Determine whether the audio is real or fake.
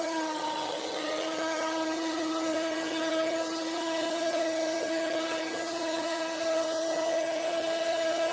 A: fake